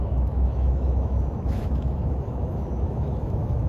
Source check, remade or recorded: remade